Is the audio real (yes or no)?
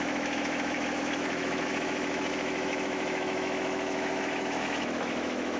no